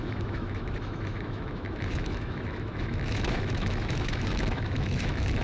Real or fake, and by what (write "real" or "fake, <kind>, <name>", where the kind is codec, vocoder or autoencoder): fake, autoencoder, DAC-VAE